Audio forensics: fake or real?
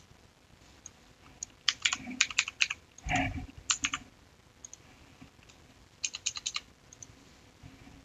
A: real